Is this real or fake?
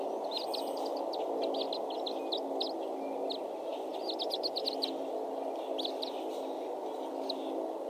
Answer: real